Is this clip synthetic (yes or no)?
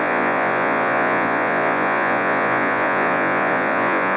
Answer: yes